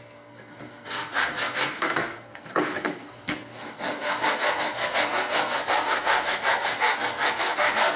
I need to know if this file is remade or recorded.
remade